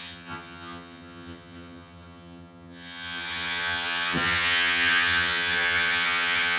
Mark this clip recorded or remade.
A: remade